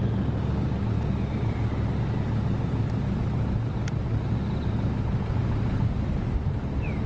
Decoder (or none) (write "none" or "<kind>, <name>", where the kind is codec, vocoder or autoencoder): none